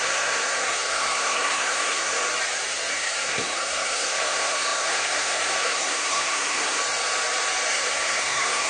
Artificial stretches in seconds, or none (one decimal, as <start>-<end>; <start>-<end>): 0.0-2.2; 2.9-6.8; 7.7-8.7